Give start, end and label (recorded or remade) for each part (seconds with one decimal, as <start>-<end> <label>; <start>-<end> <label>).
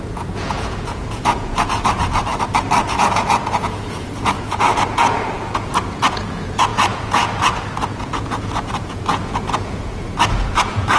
0.0-2.3 remade; 2.3-2.9 recorded; 2.9-11.0 remade